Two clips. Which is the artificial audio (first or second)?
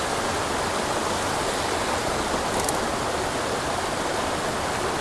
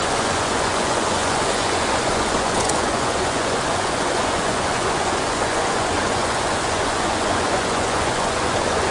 second